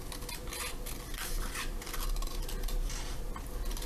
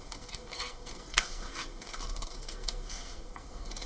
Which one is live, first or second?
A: first